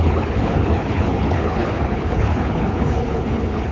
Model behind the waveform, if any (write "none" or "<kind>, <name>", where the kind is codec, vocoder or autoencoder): codec, HILCodec